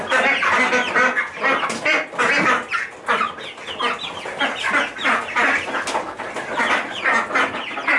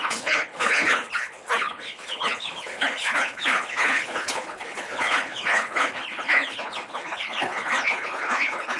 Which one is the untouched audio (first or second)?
first